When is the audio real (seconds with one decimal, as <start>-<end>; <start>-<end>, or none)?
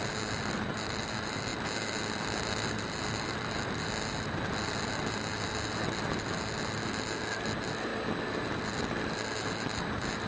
none